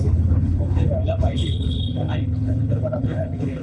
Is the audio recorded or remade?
remade